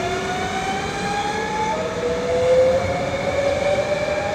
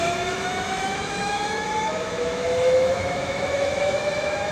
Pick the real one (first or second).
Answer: first